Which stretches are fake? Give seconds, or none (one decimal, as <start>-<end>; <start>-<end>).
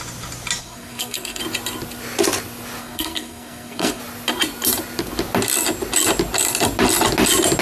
0.6-1.4; 2.8-4.0